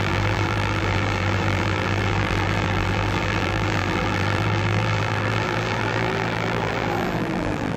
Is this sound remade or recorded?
remade